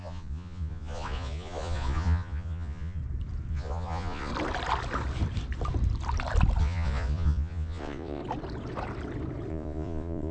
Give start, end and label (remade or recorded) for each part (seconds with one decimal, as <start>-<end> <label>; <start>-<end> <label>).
0.0-3.0 remade; 3.0-3.5 recorded; 3.5-4.3 remade; 4.3-6.6 recorded; 6.6-8.2 remade; 8.2-9.5 recorded; 9.5-10.3 remade